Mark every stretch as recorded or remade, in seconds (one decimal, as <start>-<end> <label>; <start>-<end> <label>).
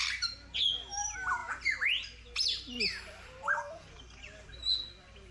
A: 0.0-5.3 recorded